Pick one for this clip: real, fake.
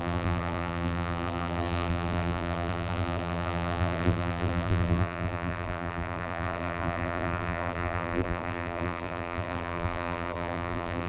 fake